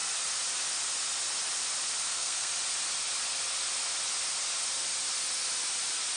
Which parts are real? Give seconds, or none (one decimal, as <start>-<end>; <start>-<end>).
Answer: 0.0-2.1; 2.5-6.2